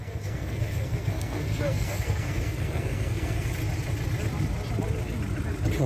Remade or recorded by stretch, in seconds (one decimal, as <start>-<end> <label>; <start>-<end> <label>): 0.0-3.5 remade; 3.5-5.9 recorded